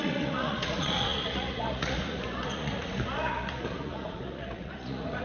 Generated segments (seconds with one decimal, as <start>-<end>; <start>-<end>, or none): 0.0-5.2